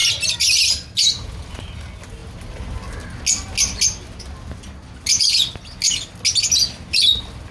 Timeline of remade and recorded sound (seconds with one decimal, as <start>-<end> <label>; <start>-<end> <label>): 0.0-7.5 recorded